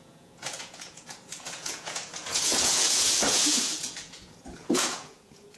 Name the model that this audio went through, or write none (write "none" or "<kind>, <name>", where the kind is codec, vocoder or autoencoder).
vocoder, Vocos